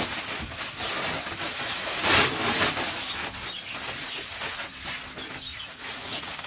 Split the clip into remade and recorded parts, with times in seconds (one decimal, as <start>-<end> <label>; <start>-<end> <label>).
0.0-4.0 recorded; 4.0-4.7 remade; 4.7-5.5 recorded; 5.5-6.5 remade